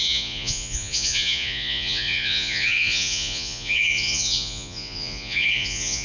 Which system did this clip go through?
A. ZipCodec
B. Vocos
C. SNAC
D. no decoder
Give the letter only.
B